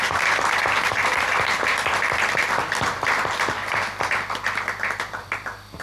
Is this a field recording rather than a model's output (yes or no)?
yes